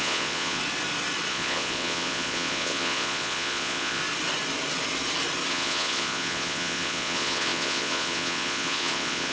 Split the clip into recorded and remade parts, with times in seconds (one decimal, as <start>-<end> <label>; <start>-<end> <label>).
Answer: 0.0-0.6 remade; 0.6-1.3 recorded; 1.3-4.0 remade; 4.0-5.5 recorded; 5.5-9.3 remade